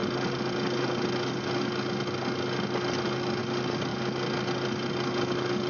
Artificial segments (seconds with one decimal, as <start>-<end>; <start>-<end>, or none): none